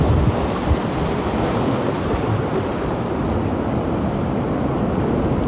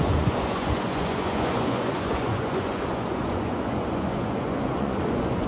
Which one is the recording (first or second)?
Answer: first